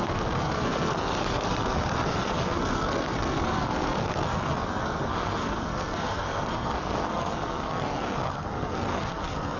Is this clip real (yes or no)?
no